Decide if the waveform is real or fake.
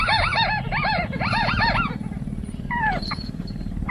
fake